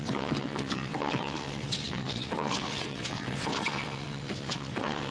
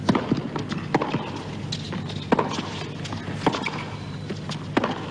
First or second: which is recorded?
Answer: second